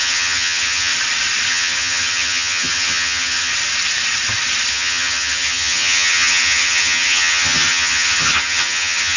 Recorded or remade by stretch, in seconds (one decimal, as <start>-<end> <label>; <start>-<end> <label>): 0.0-0.9 remade; 0.9-1.5 recorded; 1.5-3.5 remade; 3.5-4.7 recorded; 4.7-9.2 remade